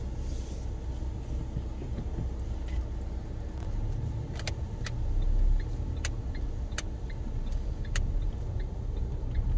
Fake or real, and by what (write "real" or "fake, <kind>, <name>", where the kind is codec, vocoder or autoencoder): real